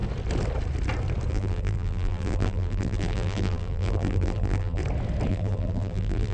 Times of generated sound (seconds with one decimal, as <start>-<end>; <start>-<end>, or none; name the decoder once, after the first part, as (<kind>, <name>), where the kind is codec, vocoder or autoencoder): 1.3-4.8 (vocoder, BigVGAN v2); 5.3-6.3